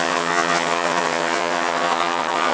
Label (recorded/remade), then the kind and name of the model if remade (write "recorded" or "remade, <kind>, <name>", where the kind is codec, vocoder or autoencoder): remade, vocoder, HiFi-GAN